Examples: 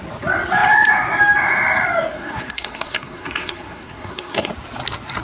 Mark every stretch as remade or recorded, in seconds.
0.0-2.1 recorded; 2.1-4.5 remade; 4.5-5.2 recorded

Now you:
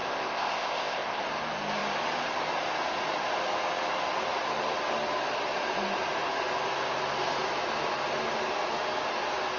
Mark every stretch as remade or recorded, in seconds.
0.0-1.2 remade; 1.2-9.6 recorded

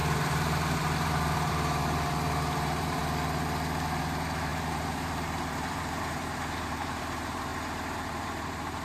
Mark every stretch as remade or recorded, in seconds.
0.0-3.0 remade; 3.0-4.0 recorded; 4.0-7.5 remade; 7.5-8.1 recorded; 8.1-8.8 remade

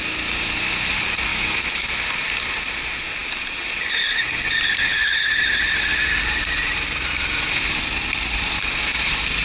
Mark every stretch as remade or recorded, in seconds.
0.0-1.3 recorded; 1.3-1.9 remade; 1.9-9.4 recorded

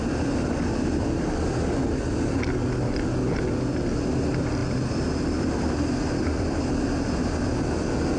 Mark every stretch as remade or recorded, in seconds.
0.0-8.2 recorded